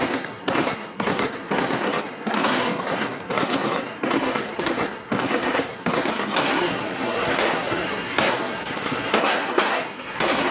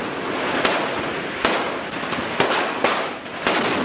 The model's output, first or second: first